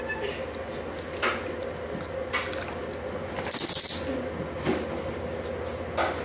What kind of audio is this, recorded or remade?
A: recorded